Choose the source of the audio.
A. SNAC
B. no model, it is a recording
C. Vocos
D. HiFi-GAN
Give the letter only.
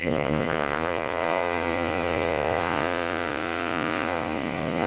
C